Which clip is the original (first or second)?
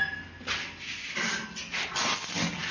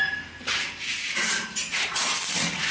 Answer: first